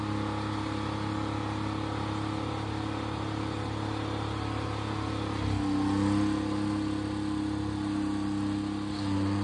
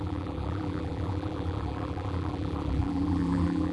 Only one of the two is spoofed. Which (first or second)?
second